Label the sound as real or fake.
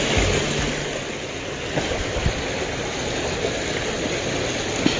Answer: real